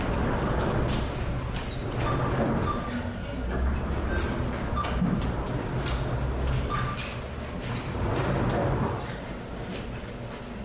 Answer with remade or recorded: recorded